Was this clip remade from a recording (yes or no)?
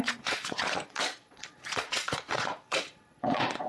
yes